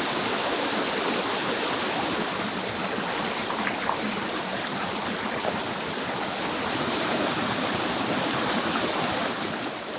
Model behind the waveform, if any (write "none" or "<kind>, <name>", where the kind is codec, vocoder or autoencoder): none